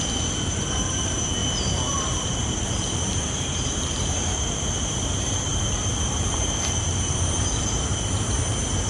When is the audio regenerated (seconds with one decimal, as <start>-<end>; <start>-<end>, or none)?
1.4-4.6; 5.5-8.9